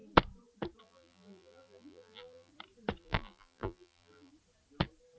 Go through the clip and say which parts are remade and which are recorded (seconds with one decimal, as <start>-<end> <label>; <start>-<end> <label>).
0.0-0.8 recorded; 0.8-2.5 remade; 2.5-3.0 recorded; 3.0-4.3 remade; 4.3-5.2 recorded